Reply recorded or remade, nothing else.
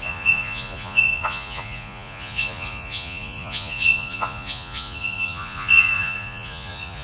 remade